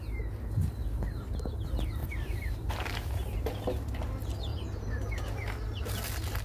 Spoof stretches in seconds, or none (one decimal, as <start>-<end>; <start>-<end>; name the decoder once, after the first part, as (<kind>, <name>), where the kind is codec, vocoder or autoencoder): 2.0-2.7 (vocoder, BigVGAN v2); 4.5-5.1